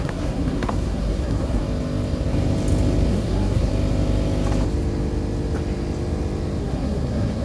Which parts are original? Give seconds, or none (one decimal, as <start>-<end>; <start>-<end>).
1.6-3.1; 3.7-6.6